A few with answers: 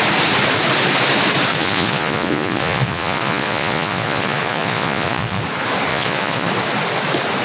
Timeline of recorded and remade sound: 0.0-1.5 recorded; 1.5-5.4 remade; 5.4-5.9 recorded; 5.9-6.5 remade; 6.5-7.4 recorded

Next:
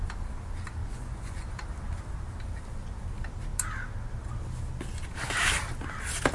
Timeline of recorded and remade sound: 0.0-0.8 recorded; 0.8-1.5 remade; 1.5-6.3 recorded

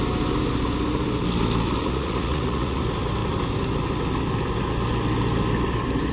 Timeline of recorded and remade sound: 0.0-1.8 recorded; 1.8-2.8 remade; 2.8-6.1 recorded

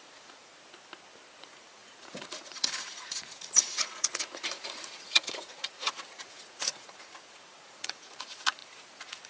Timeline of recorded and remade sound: 0.0-0.5 remade; 0.5-1.4 recorded; 1.4-9.3 remade

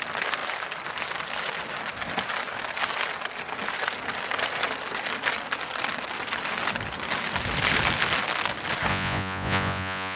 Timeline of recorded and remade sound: 0.0-8.9 recorded; 8.9-10.2 remade

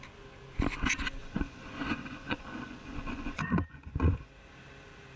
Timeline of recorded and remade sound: 0.0-1.2 recorded; 1.2-4.3 remade; 4.3-5.2 recorded